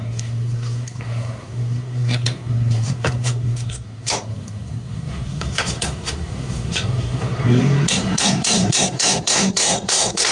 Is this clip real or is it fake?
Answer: fake